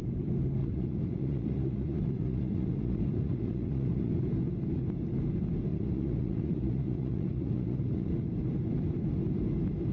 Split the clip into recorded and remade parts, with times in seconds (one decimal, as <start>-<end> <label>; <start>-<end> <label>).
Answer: 0.0-0.6 recorded; 0.6-4.1 remade; 4.1-5.7 recorded; 5.7-8.1 remade; 8.1-9.9 recorded